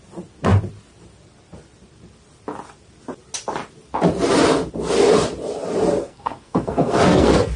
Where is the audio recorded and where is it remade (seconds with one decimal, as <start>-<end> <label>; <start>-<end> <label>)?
0.0-6.0 recorded; 6.0-7.6 remade